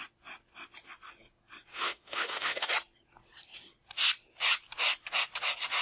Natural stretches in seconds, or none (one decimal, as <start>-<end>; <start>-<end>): 0.0-1.7; 2.7-5.8